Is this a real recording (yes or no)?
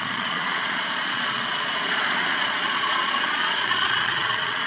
no